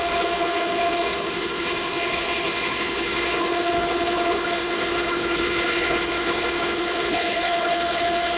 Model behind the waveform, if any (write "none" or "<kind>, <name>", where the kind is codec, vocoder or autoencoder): codec, HILCodec